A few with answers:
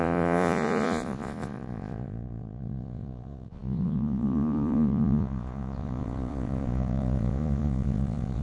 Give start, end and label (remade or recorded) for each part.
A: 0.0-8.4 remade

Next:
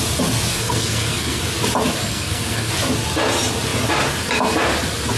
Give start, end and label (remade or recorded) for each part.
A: 0.0-0.5 recorded; 0.5-1.4 remade; 1.4-2.0 recorded; 2.0-2.7 remade; 2.7-5.2 recorded